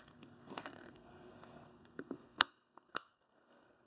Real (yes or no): no